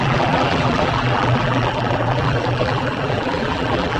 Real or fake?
fake